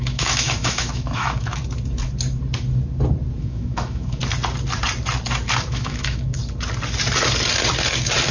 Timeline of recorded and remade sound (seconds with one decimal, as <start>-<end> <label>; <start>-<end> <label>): 0.0-1.6 remade; 1.6-3.4 recorded; 3.4-4.2 remade; 4.2-5.7 recorded; 5.7-6.4 remade; 6.4-8.3 recorded